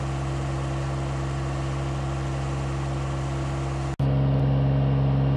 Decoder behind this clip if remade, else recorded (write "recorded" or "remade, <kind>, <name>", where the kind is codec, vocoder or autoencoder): recorded